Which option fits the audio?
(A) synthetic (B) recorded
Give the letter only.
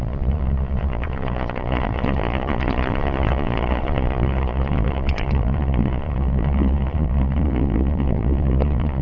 A